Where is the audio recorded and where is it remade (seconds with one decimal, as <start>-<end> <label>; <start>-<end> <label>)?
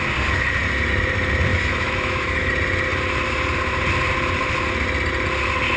0.0-1.5 recorded; 1.5-2.5 remade; 2.5-5.8 recorded